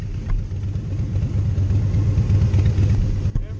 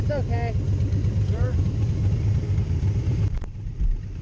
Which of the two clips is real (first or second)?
first